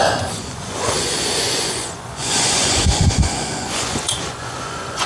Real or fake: fake